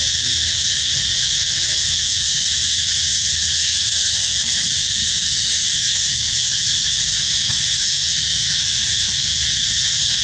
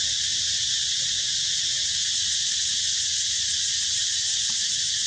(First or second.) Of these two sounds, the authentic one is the second